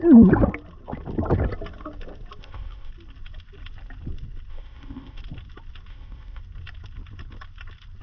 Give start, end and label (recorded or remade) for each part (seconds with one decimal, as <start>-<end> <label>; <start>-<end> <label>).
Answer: 0.0-2.4 recorded; 2.4-2.9 remade; 2.9-4.5 recorded; 4.5-5.2 remade; 5.2-5.9 recorded; 5.9-6.4 remade; 6.4-8.0 recorded

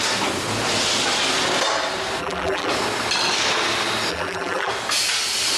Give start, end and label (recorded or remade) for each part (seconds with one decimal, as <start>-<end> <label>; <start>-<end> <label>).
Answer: 0.0-2.2 recorded; 2.2-2.7 remade; 2.7-4.1 recorded; 4.1-4.7 remade; 4.7-5.6 recorded